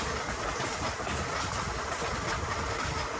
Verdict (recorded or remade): recorded